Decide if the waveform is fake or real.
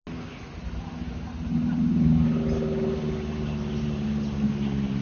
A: real